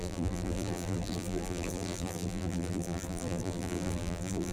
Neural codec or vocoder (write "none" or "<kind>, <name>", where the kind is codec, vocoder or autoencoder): vocoder, BigVGAN v2